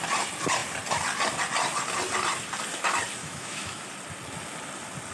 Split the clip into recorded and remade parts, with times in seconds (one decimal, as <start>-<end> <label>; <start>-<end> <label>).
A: 0.0-3.2 recorded; 3.2-3.8 remade; 3.8-5.1 recorded